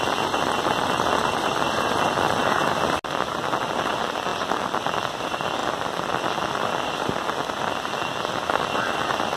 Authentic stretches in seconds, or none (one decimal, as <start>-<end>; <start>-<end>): 2.4-3.9